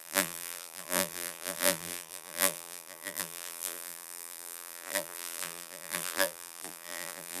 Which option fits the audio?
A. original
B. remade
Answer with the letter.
B